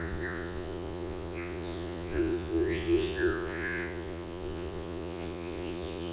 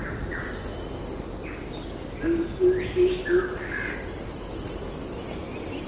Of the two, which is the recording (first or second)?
second